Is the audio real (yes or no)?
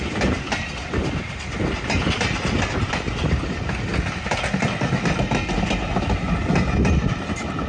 yes